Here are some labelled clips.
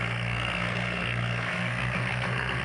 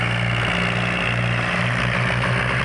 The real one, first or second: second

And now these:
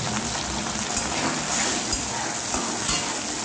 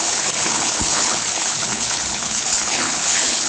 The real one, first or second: first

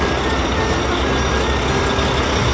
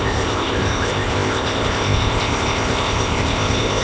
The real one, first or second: first